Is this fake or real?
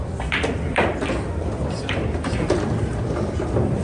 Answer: fake